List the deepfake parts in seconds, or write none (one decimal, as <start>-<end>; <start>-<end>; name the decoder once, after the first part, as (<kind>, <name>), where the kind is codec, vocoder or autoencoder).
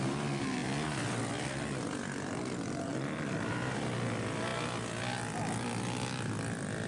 none